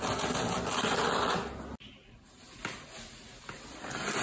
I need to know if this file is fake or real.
real